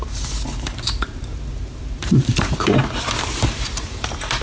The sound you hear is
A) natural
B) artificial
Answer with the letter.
B